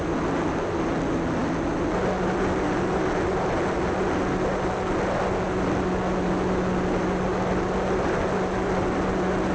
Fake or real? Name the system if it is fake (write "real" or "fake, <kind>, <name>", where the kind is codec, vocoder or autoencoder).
real